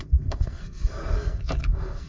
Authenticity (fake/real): fake